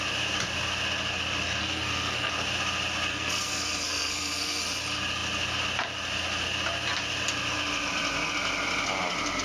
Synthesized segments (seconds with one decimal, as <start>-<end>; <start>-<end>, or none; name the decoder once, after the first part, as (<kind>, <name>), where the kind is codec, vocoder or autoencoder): 1.6-2.3 (codec, SNAC); 3.1-4.6